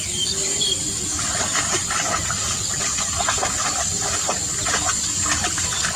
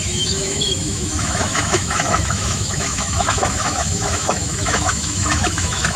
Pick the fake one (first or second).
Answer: second